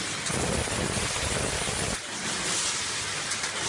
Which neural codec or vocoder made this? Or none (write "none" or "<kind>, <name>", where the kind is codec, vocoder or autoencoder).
none